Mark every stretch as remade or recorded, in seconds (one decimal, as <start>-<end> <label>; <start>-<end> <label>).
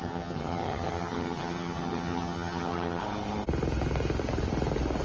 0.0-3.0 remade; 3.0-5.0 recorded